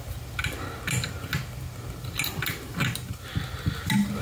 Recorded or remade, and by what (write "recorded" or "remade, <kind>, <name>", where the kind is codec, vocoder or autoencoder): recorded